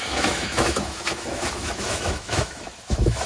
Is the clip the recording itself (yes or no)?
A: no